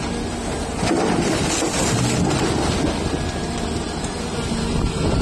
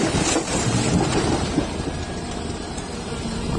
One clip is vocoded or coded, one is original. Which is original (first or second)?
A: first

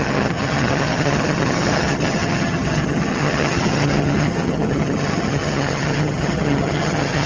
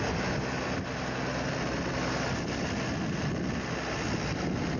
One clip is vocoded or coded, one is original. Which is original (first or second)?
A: second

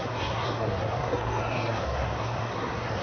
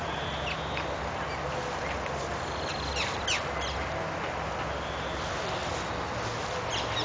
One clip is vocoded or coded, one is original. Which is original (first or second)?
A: second